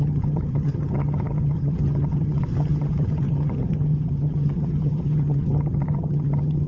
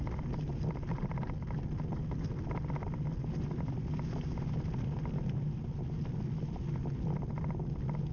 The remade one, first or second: first